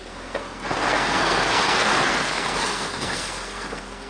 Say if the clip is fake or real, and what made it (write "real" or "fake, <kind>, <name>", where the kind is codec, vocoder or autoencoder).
fake, codec, SNAC